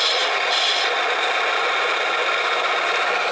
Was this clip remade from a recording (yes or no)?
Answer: no